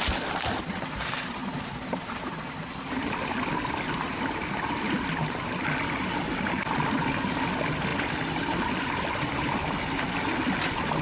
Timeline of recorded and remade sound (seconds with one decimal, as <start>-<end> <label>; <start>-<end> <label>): 0.0-11.0 recorded